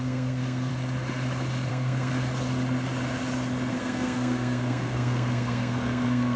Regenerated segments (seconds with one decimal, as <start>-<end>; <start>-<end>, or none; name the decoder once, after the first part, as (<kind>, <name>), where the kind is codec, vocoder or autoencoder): 0.0-0.7 (codec, SNAC); 1.7-2.1; 3.7-6.4